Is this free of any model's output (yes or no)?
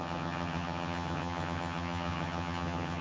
no